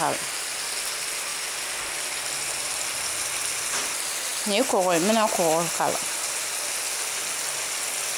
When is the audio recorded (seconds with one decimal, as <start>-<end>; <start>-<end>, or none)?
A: 0.0-8.2